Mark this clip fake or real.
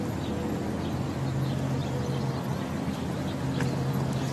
real